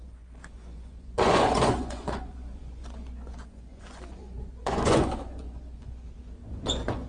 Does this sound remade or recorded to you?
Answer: remade